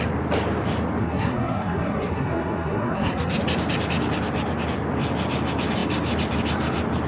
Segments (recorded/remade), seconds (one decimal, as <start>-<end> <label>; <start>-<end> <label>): 0.0-1.0 recorded; 1.0-3.4 remade; 3.4-7.1 recorded